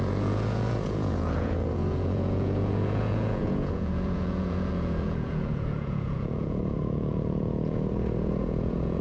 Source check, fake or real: fake